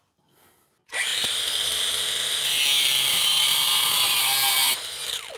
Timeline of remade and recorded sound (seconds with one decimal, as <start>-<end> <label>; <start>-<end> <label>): 0.0-5.4 recorded

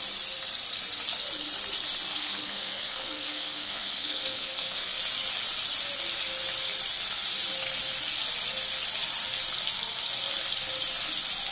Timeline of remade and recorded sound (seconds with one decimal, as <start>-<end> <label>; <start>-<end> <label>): 0.0-2.1 recorded; 2.1-5.0 remade; 5.0-11.5 recorded

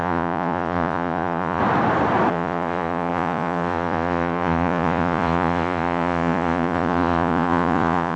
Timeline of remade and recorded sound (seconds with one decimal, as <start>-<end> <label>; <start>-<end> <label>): 0.0-1.6 remade; 1.6-2.3 recorded; 2.3-8.2 remade

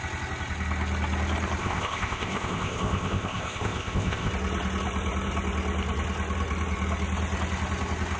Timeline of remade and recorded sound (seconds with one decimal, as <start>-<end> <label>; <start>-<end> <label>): 0.0-1.6 recorded; 1.6-4.3 remade; 4.3-8.2 recorded

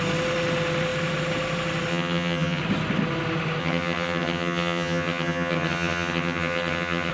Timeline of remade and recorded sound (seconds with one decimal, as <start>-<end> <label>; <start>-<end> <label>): 0.0-1.9 recorded; 1.9-2.6 remade; 2.6-3.6 recorded; 3.6-7.1 remade

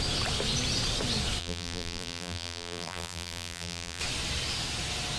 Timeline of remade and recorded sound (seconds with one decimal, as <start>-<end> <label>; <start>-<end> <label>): 0.0-1.4 recorded; 1.4-4.0 remade; 4.0-5.2 recorded

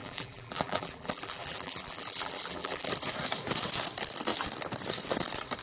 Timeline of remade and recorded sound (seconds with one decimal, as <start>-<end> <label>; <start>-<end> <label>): 0.0-2.9 remade; 2.9-5.6 recorded